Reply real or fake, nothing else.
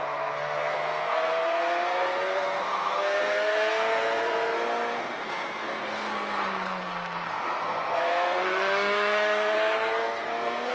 fake